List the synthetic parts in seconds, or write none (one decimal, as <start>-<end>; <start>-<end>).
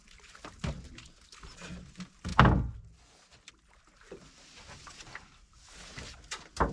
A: none